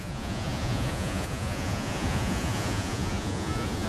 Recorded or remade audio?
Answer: remade